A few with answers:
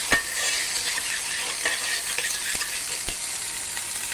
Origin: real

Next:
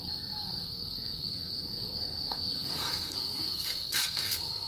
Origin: fake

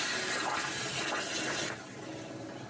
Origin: real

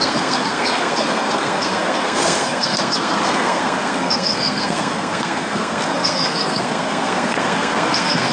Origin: fake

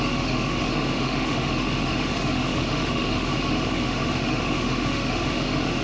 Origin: fake